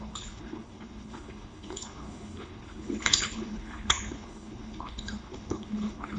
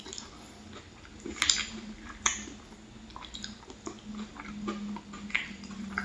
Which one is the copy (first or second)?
first